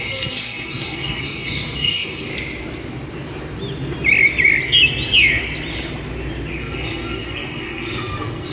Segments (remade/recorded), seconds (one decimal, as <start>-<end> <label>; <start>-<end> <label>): 0.0-2.3 remade; 2.3-6.6 recorded; 6.6-8.5 remade